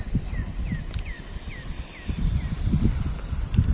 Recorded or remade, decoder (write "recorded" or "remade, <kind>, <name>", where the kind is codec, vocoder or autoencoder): recorded